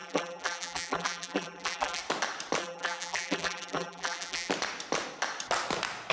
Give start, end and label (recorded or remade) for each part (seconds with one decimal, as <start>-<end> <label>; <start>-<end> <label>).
0.0-2.0 remade; 2.0-2.6 recorded; 2.6-4.5 remade; 4.5-6.1 recorded